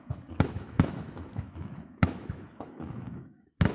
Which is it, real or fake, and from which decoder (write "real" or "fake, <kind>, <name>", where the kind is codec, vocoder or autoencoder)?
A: fake, autoencoder, DAC-VAE